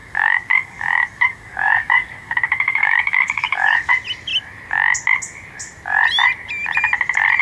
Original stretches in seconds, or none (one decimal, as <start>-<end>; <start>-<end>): 3.9-7.4